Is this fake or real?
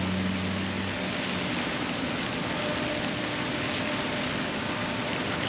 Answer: real